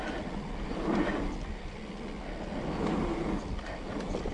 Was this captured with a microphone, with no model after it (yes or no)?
yes